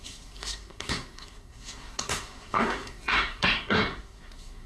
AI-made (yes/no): yes